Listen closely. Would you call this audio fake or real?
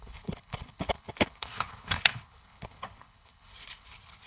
fake